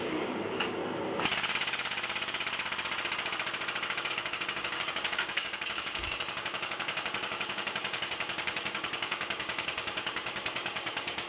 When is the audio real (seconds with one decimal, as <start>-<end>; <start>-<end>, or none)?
0.8-4.1